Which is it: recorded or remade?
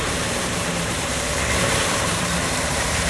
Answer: remade